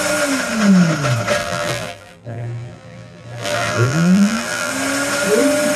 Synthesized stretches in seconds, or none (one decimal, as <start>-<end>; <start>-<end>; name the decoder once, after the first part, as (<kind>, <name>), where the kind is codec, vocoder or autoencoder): 1.4-4.7 (vocoder, BigVGAN v2)